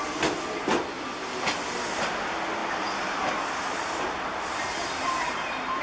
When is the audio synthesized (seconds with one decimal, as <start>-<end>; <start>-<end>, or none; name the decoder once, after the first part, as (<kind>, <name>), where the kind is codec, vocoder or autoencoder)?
2.6-5.8 (vocoder, BigVGAN v2)